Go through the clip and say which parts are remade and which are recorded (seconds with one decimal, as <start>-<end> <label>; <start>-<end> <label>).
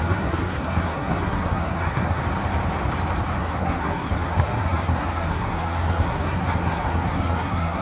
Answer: 0.0-2.2 remade; 2.2-3.4 recorded; 3.4-7.8 remade